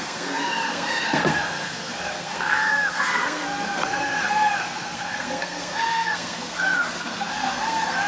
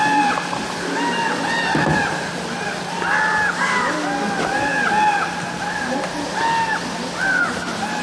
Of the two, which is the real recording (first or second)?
second